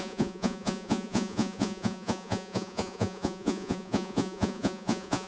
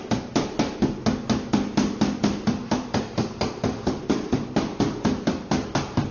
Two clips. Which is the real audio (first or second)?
second